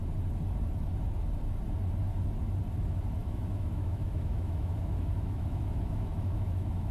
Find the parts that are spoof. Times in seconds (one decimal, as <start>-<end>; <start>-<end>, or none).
3.2-6.9